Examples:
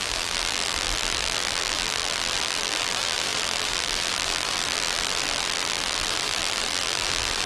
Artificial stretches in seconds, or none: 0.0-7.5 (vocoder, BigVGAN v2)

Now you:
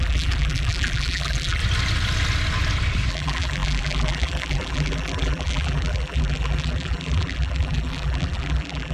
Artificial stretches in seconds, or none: 0.0-1.6 (vocoder, BigVGAN v2); 3.1-8.9

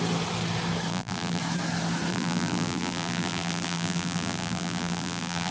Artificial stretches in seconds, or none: 0.9-1.4 (vocoder, BigVGAN v2); 2.1-5.5

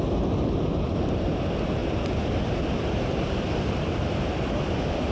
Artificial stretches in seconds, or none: none